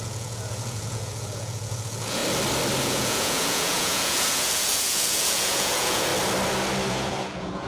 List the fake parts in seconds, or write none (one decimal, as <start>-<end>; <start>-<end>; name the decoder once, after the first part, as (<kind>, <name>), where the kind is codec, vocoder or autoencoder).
0.0-2.2 (vocoder, Vocos); 2.8-6.1; 6.9-7.7